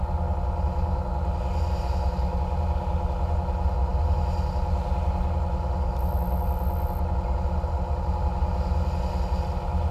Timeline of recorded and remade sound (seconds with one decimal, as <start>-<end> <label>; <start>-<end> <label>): 0.0-9.9 recorded